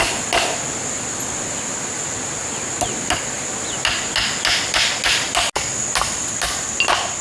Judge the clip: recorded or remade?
recorded